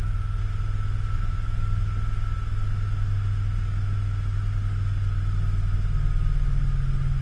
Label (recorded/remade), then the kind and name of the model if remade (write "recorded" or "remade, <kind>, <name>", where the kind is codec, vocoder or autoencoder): recorded